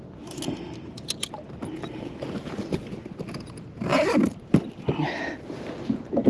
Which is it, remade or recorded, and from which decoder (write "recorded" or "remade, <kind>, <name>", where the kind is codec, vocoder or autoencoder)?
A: recorded